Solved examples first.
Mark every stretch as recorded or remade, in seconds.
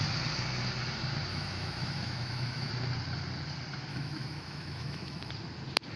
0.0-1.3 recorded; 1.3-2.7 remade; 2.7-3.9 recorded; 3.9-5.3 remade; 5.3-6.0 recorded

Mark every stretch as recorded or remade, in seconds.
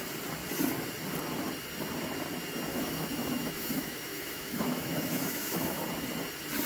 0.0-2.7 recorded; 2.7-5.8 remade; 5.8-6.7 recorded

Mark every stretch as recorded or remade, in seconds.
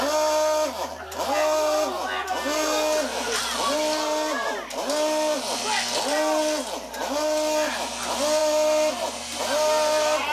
0.0-10.3 recorded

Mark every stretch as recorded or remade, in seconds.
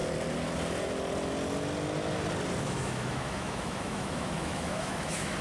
0.0-2.6 recorded; 2.6-5.4 remade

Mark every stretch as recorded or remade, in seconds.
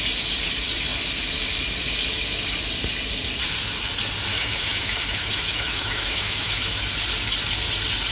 0.0-4.3 recorded; 4.3-6.8 remade; 6.8-8.1 recorded